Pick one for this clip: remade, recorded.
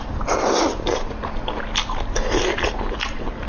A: recorded